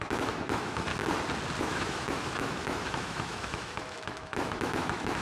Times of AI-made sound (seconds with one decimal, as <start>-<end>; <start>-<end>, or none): 0.0-0.9; 1.6-5.2